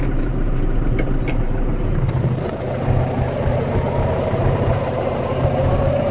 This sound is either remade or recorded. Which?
remade